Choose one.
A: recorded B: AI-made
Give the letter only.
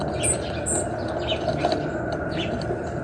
A